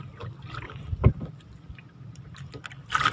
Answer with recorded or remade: recorded